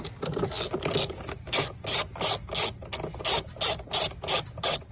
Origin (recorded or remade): recorded